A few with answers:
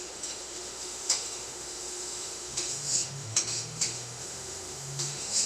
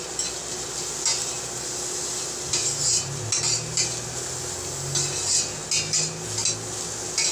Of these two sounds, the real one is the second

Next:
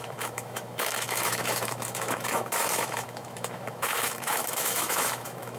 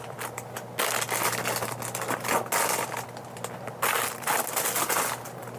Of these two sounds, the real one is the second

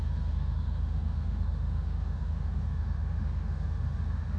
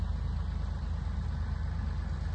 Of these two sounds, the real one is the second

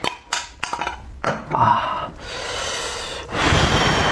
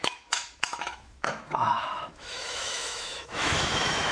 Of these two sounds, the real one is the first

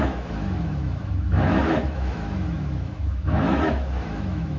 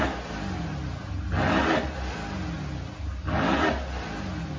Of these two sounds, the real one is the second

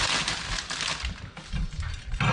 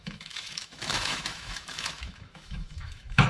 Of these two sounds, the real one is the first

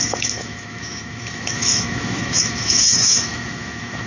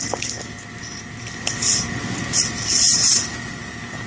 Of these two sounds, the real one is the second